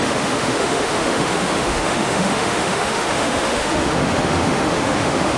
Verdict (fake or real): fake